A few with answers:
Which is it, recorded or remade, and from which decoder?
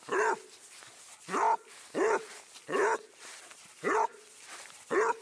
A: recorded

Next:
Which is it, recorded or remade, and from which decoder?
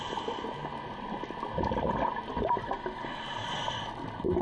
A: recorded